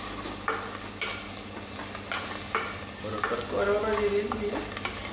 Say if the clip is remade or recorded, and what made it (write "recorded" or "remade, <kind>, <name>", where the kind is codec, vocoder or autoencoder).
recorded